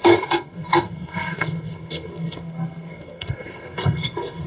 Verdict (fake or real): fake